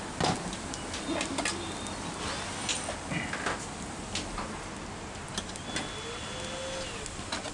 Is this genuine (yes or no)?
yes